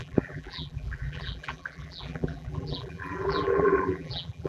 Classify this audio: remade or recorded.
remade